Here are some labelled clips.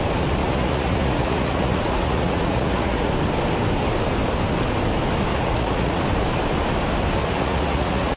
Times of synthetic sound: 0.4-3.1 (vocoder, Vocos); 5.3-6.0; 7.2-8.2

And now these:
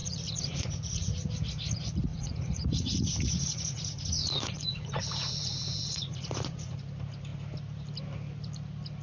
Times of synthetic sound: 0.0-1.3 (vocoder, Vocos); 2.1-6.8

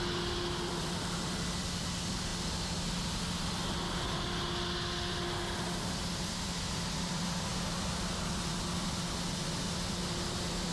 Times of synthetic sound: none